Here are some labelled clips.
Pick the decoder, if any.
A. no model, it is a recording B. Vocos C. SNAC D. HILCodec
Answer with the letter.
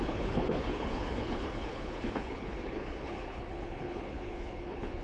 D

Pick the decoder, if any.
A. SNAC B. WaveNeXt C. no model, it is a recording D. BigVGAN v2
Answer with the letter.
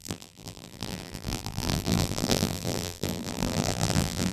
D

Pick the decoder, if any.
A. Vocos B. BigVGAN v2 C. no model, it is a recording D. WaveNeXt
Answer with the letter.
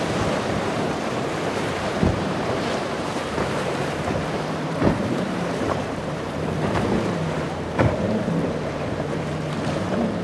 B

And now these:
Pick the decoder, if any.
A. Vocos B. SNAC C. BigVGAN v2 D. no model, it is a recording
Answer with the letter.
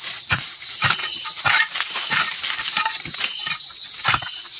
D